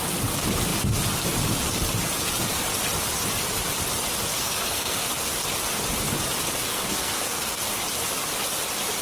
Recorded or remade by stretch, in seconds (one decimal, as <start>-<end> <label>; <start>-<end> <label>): 0.0-4.3 recorded; 4.3-5.1 remade; 5.1-6.7 recorded; 6.7-7.6 remade; 7.6-9.0 recorded